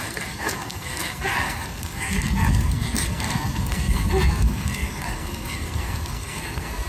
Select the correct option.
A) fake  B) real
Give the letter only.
A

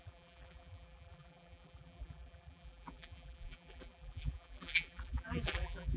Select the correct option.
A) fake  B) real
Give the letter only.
A